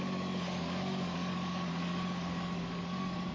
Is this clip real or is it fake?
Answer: fake